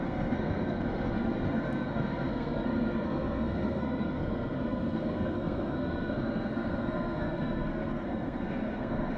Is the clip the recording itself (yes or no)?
no